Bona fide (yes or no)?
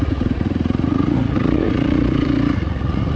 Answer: no